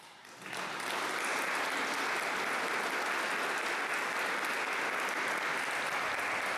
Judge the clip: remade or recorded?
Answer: recorded